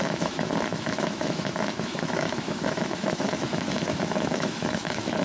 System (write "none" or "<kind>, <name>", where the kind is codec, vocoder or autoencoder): autoencoder, DAC-VAE